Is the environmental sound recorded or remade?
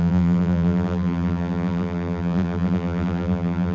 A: remade